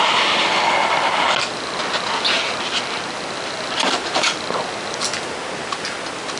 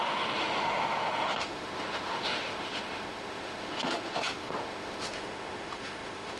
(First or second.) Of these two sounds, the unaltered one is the first